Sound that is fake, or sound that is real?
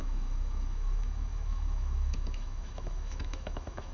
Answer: fake